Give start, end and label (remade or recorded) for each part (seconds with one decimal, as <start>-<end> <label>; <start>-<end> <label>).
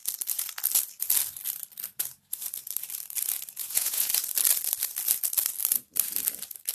0.0-3.6 recorded; 3.6-4.1 remade; 4.1-6.7 recorded